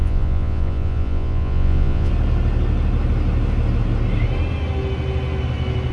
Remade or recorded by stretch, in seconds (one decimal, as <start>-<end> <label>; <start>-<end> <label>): 0.0-2.1 remade; 2.1-5.9 recorded